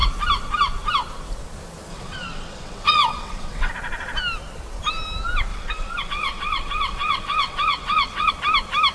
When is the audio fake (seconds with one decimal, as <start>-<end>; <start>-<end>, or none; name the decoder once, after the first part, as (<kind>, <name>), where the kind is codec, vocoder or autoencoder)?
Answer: 1.9-3.7 (vocoder, WaveNeXt); 5.5-8.3